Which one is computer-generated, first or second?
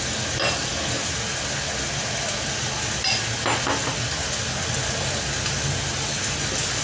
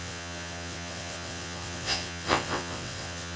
second